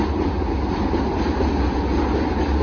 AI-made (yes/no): no